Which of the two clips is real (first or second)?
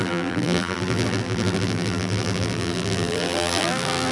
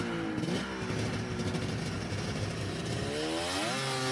second